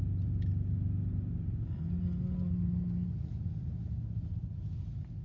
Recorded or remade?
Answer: recorded